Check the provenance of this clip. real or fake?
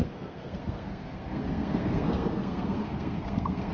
fake